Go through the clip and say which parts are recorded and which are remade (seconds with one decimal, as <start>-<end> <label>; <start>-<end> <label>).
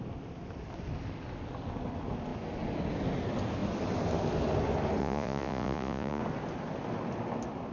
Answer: 0.0-5.0 recorded; 5.0-6.2 remade; 6.2-7.7 recorded